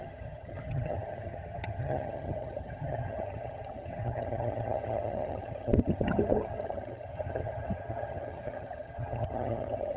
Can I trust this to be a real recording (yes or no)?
no